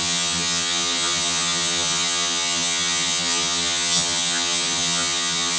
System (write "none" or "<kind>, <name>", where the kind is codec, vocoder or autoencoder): vocoder, HiFi-GAN